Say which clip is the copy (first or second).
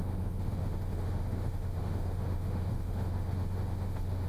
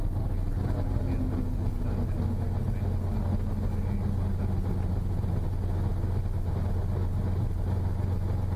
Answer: first